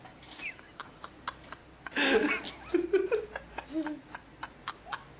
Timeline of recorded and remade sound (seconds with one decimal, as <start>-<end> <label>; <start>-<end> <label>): 0.0-5.2 recorded